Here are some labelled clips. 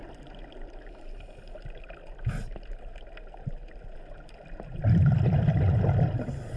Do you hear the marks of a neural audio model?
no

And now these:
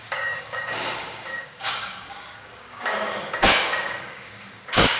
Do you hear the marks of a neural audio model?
yes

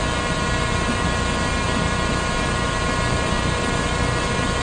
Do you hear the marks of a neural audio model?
yes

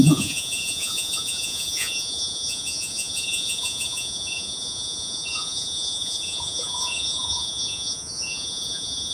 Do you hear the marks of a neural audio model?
yes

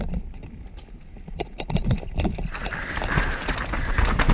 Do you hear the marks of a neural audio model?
no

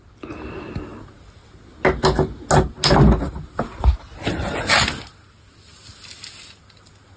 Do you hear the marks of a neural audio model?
no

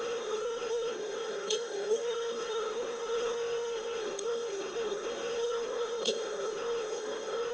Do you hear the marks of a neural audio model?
yes